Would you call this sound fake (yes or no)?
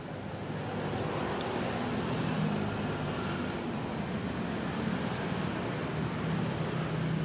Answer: no